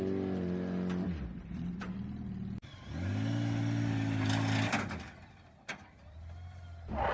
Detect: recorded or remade recorded